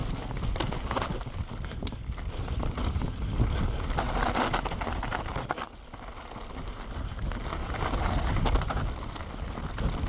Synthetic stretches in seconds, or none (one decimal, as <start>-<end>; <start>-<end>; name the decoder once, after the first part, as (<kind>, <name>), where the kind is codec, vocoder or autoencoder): none